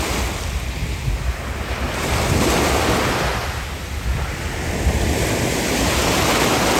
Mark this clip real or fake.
real